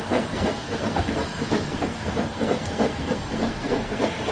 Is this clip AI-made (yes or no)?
yes